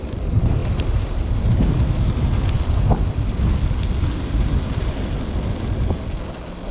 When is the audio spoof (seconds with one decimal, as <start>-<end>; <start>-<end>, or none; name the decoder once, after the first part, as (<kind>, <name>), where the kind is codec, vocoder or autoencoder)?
none